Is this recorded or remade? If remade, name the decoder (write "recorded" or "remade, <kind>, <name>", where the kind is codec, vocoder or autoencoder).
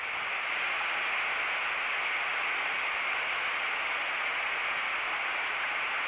recorded